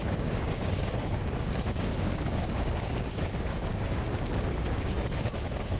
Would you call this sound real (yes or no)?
no